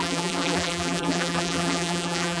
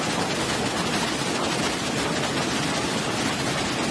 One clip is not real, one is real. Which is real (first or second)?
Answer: second